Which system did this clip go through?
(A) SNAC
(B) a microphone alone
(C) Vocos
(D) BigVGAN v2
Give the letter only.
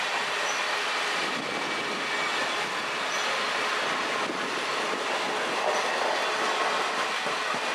B